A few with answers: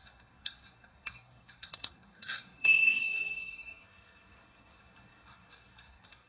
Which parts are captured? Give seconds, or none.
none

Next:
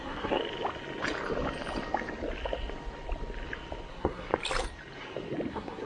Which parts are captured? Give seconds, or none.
0.4-3.9; 4.3-5.5

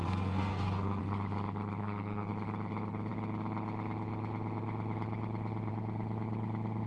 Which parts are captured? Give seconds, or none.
1.0-1.8; 2.3-6.9

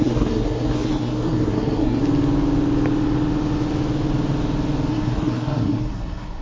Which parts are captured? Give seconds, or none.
2.0-4.9

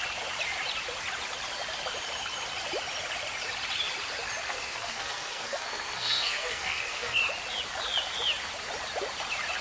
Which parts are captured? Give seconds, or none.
0.0-4.4; 7.2-9.6

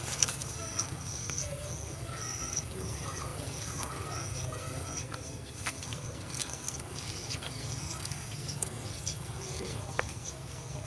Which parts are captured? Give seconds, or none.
none

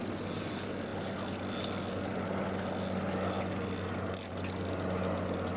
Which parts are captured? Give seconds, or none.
0.0-5.6

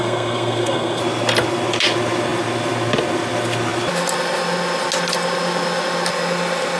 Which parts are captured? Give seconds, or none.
1.0-6.8